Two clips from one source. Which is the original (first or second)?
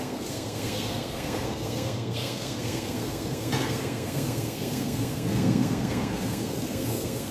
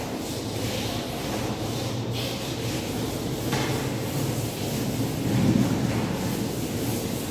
second